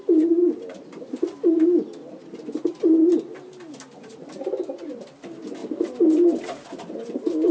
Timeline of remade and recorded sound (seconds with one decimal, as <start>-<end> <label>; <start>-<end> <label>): 0.0-7.5 recorded